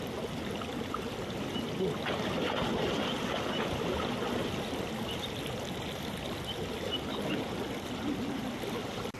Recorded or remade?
recorded